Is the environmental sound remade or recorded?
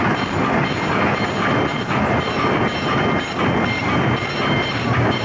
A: recorded